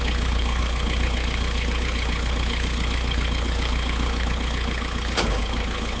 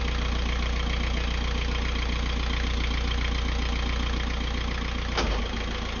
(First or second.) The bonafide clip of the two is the second